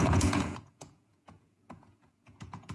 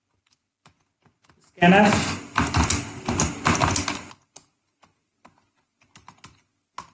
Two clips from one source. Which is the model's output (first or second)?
first